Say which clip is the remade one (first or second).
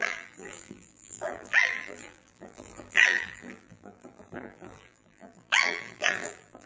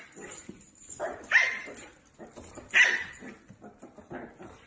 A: first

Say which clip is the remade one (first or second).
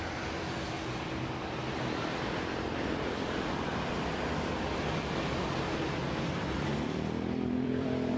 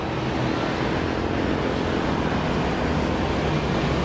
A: first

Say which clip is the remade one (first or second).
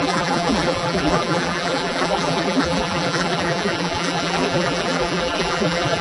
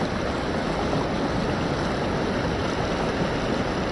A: first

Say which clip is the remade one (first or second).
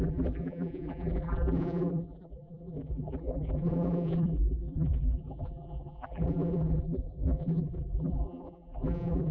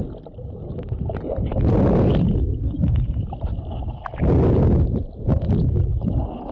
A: first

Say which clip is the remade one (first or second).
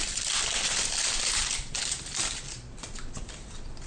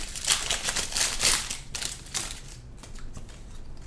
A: first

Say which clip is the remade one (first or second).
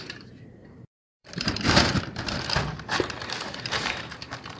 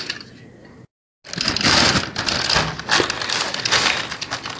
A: first